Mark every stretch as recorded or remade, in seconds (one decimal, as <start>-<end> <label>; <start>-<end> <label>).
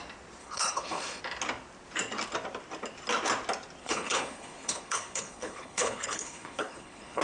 0.0-0.4 recorded; 0.4-1.2 remade; 1.2-3.8 recorded; 3.8-7.2 remade